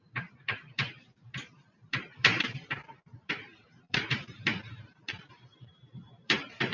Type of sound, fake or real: fake